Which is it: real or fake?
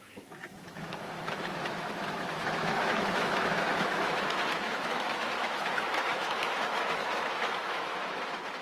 fake